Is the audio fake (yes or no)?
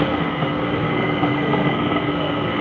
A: yes